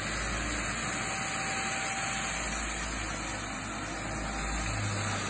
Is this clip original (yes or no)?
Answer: yes